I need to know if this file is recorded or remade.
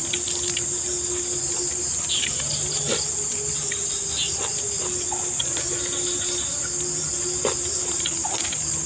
recorded